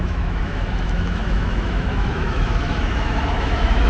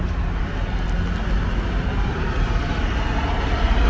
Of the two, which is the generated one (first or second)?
first